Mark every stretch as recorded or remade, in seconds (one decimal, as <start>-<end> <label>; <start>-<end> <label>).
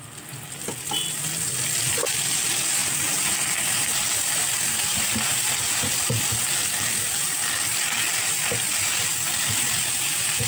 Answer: 0.0-10.5 recorded